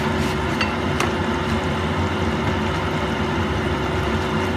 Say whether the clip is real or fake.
real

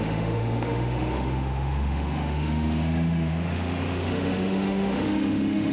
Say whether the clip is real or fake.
fake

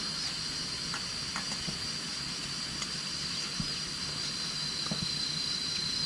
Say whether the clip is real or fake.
real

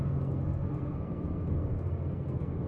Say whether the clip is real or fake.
fake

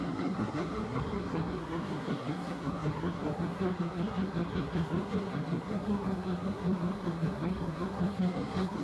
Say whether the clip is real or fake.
fake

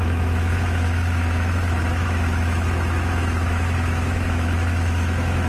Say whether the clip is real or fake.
fake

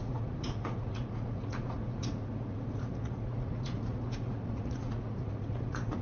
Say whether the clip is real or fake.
fake